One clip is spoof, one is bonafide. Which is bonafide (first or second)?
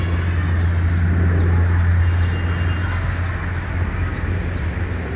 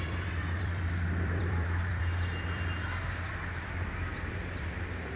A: first